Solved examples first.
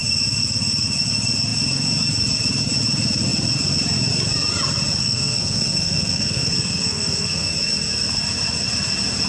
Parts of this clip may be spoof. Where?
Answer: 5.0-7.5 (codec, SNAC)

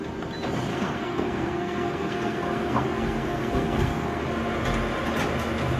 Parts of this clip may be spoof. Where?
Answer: 0.7-4.2 (codec, SNAC)

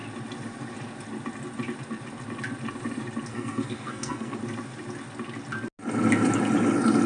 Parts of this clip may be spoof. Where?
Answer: 3.3-4.4 (codec, SNAC)

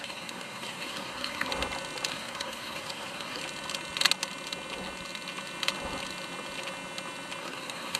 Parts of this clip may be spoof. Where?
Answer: 0.0-1.5 (codec, SNAC); 2.1-3.4; 7.4-8.0

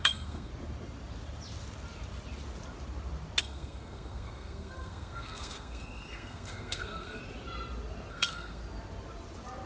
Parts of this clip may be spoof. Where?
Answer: 0.0-0.5 (codec, SNAC); 3.4-7.2; 8.1-8.6